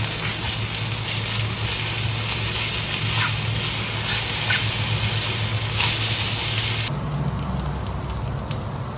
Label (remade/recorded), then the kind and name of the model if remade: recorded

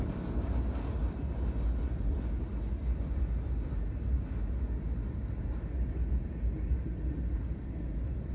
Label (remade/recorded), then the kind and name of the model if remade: recorded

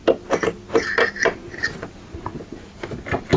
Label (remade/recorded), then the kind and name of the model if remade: recorded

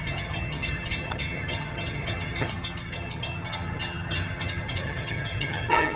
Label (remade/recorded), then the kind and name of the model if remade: remade, vocoder, HiFi-GAN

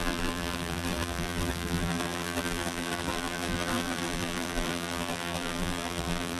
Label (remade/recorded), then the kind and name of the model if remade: remade, vocoder, BigVGAN v2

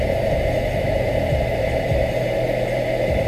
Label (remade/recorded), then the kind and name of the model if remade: remade, vocoder, BigVGAN v2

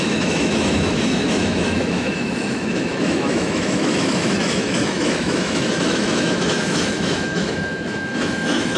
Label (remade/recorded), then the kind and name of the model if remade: remade, autoencoder, DAC-VAE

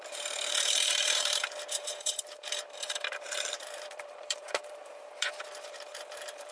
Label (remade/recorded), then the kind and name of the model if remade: remade, vocoder, BigVGAN v2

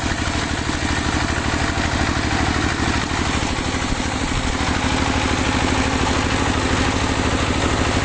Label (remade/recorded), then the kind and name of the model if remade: recorded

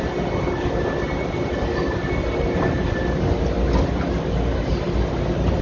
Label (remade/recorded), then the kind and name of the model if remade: recorded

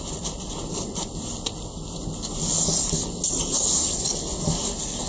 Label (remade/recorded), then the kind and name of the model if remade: recorded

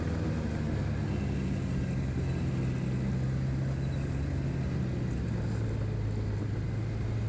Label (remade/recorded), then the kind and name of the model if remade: recorded